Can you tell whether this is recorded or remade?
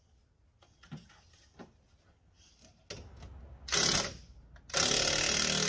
recorded